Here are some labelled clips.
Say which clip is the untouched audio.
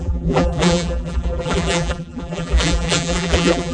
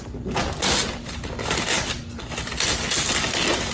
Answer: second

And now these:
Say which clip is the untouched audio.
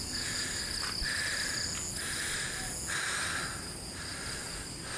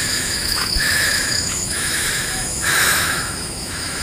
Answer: first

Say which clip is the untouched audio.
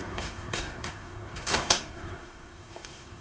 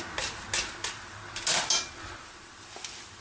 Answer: second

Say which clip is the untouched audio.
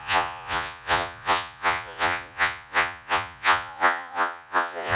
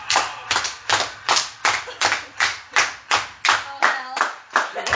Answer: second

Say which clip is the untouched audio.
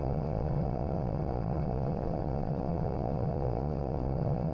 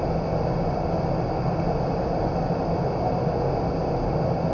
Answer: second